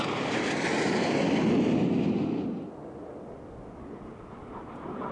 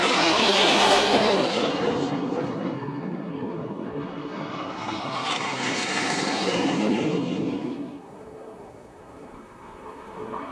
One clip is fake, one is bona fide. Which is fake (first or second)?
second